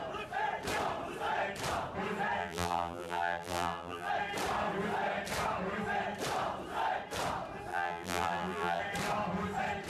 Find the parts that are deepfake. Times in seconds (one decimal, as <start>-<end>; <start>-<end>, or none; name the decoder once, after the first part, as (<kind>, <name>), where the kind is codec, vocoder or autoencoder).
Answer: 2.4-4.1 (vocoder, BigVGAN v2); 7.7-8.8